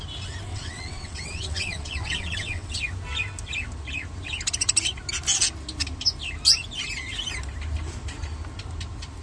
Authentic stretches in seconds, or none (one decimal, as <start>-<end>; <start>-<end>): 0.0-0.5; 2.8-9.2